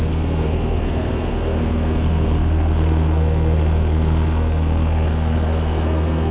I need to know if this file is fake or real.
fake